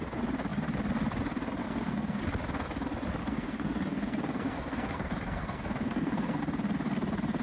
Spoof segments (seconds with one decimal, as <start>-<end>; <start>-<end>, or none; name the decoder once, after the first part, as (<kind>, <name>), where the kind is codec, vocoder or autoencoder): 1.6-2.2 (codec, SNAC); 3.2-6.4